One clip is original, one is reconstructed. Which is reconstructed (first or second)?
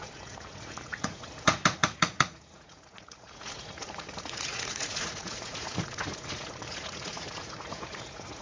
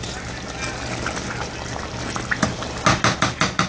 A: first